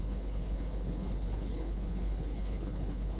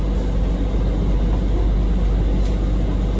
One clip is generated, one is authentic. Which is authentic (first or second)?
second